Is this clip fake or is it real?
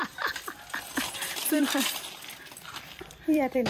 fake